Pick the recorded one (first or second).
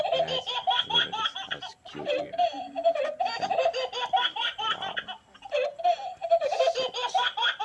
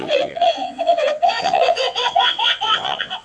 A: first